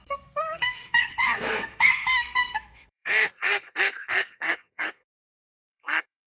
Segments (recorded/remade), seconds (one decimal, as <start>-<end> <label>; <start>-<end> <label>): 0.0-6.3 remade

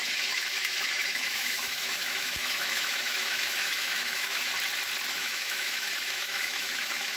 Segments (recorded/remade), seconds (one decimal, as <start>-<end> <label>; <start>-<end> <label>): 0.0-4.5 remade; 4.5-5.1 recorded; 5.1-7.2 remade

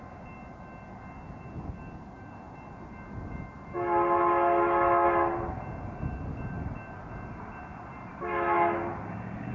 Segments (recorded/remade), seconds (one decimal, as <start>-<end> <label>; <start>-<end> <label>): 0.0-9.5 recorded

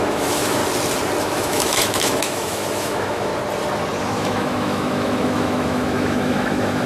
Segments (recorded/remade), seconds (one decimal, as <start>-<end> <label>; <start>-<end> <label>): 0.0-0.6 remade; 0.6-1.2 recorded; 1.2-3.3 remade; 3.3-4.0 recorded; 4.0-6.9 remade

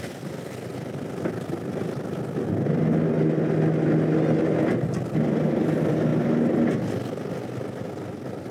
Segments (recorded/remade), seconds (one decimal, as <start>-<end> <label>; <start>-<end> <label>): 0.0-8.5 recorded

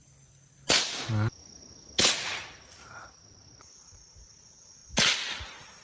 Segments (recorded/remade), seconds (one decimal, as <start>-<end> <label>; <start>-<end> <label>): 0.0-2.0 recorded; 2.0-4.8 remade; 4.8-5.3 recorded; 5.3-5.8 remade

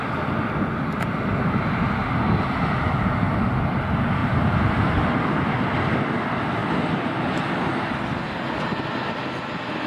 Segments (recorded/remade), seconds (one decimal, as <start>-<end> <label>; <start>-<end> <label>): 0.0-9.9 recorded